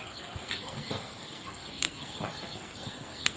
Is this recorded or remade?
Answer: remade